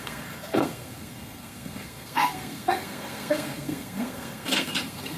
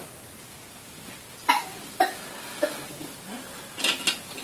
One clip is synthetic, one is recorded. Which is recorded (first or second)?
second